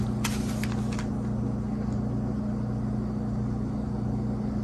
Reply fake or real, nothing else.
real